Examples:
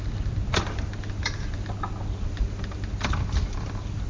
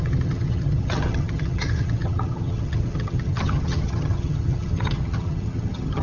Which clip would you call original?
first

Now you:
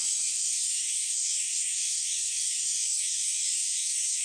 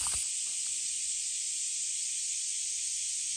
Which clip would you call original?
second